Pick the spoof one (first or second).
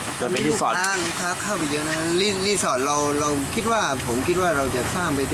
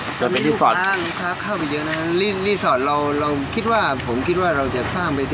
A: first